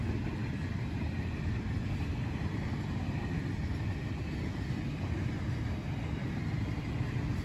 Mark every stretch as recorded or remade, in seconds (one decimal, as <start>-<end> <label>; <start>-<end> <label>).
0.0-7.4 recorded